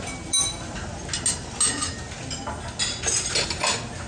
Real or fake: real